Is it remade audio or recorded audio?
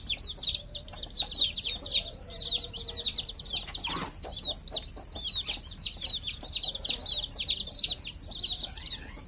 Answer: recorded